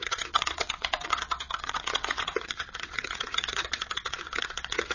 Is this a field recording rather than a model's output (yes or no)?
no